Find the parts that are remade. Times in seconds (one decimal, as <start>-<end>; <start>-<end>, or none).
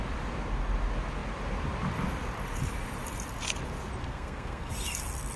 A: 4.0-4.7